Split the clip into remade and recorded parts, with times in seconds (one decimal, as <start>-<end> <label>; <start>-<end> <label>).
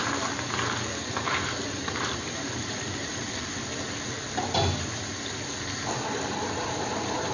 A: 0.0-1.2 recorded; 1.2-3.6 remade; 3.6-6.1 recorded; 6.1-7.3 remade